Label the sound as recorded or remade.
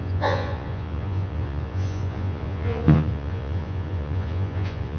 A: remade